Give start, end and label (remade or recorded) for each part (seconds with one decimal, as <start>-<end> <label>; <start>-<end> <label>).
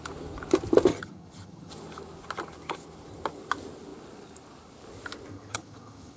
0.0-0.9 recorded; 0.9-1.7 remade; 1.7-5.3 recorded; 5.3-6.2 remade